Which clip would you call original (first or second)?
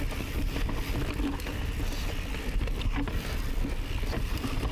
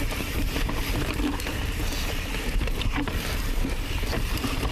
first